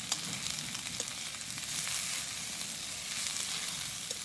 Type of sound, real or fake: real